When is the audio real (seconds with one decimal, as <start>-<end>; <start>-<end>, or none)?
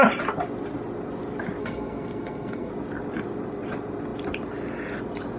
0.0-1.6; 2.7-5.4